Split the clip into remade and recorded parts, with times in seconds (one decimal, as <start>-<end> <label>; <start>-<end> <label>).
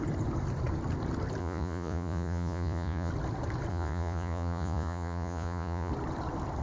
0.0-1.4 recorded; 1.4-3.1 remade; 3.1-3.7 recorded; 3.7-5.9 remade; 5.9-6.6 recorded